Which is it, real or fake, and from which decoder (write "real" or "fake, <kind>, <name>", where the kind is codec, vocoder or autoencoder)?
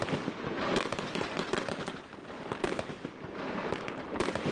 fake, vocoder, BigVGAN v2